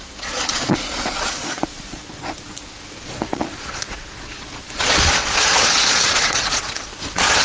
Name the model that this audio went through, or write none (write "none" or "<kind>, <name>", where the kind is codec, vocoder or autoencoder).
vocoder, Vocos